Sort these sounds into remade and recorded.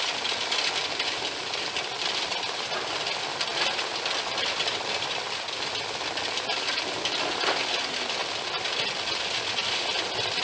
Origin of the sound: recorded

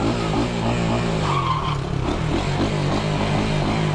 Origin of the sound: recorded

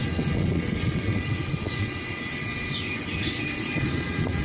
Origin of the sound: remade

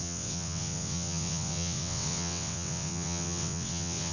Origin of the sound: remade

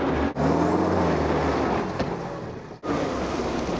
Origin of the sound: recorded